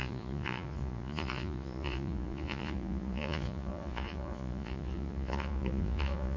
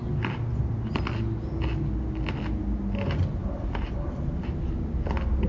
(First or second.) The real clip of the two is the second